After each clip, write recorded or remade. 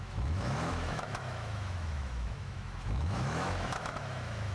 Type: remade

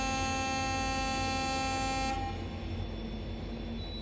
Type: recorded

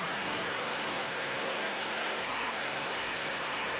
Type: remade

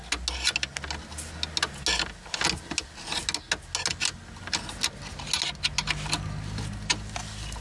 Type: recorded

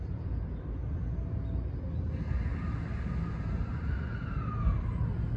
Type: recorded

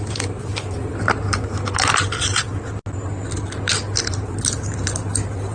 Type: recorded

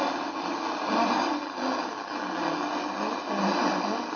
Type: recorded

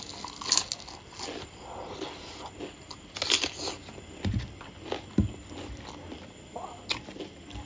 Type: recorded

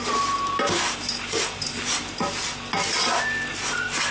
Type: recorded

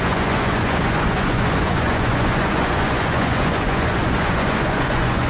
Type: remade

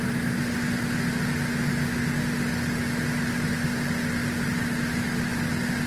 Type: recorded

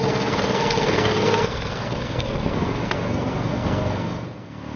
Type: remade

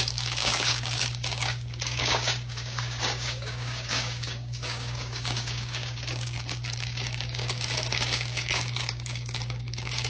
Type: remade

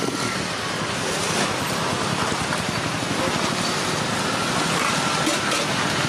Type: recorded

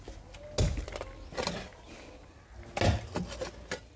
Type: recorded